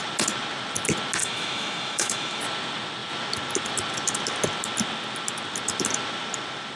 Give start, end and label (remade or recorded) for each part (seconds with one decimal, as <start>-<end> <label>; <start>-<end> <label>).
0.0-1.2 recorded; 1.2-2.4 remade; 2.4-6.8 recorded